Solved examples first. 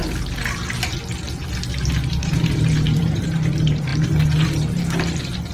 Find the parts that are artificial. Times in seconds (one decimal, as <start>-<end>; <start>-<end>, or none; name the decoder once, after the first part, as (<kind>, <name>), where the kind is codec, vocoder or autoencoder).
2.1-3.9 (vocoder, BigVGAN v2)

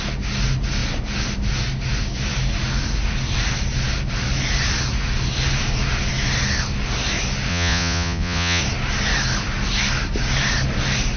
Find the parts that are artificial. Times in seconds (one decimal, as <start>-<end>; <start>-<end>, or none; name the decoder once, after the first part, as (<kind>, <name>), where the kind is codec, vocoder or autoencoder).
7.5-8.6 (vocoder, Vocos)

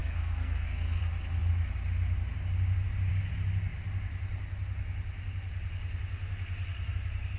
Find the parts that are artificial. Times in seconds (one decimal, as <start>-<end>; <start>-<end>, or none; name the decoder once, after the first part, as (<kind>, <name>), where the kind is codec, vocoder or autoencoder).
0.0-1.0 (codec, SNAC)